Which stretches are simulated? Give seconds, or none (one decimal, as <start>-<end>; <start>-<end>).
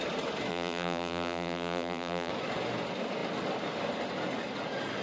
0.5-2.3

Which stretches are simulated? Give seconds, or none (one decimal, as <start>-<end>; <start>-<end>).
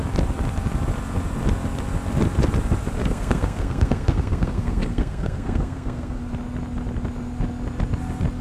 3.0-6.2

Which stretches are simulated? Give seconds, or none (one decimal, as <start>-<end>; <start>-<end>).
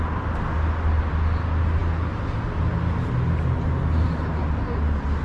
none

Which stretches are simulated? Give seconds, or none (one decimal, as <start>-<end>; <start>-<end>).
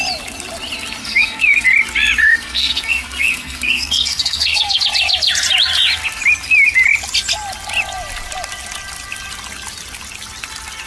1.0-1.7; 2.2-4.8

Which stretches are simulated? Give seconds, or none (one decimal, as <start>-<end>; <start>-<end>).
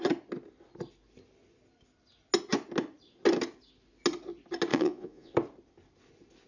4.7-5.3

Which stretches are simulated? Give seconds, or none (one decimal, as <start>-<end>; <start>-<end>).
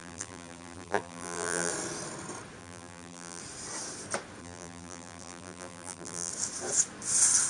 0.0-1.7; 2.6-3.4; 4.4-6.3